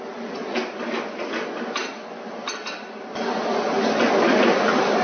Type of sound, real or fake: real